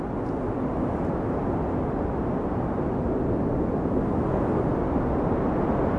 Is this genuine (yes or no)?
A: yes